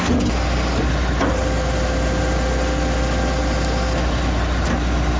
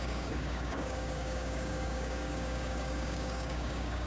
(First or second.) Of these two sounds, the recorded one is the first